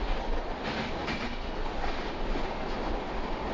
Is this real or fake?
real